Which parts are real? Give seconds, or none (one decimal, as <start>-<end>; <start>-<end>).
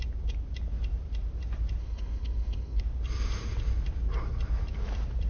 0.0-1.8; 2.8-5.3